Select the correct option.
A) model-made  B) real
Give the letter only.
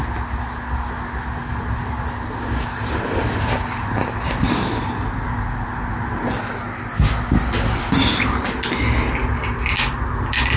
B